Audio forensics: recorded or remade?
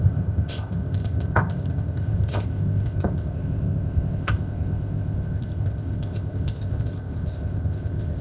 remade